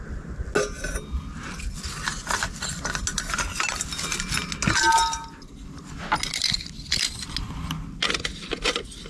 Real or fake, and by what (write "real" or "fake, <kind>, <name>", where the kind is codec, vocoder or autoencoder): real